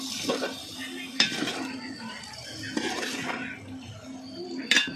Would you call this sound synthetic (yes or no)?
no